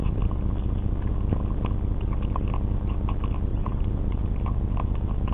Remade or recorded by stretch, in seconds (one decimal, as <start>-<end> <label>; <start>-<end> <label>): 0.0-3.5 recorded; 3.5-4.2 remade; 4.2-5.3 recorded